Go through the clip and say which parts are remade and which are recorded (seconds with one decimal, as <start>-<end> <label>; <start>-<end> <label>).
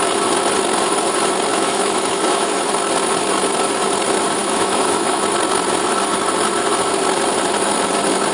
0.0-1.5 recorded; 1.5-2.6 remade; 2.6-4.4 recorded; 4.4-5.2 remade; 5.2-8.3 recorded